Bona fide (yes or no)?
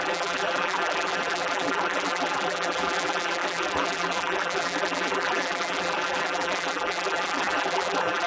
no